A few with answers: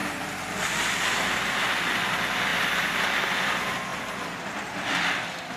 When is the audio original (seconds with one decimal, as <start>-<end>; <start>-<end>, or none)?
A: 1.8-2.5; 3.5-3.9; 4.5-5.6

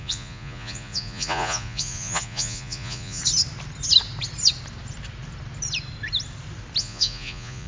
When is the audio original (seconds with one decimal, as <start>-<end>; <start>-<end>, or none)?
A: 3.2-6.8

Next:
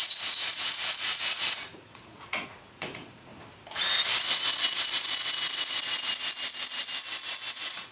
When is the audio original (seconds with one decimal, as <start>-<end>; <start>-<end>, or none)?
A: 3.3-7.5